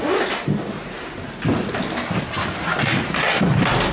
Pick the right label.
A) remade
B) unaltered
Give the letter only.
B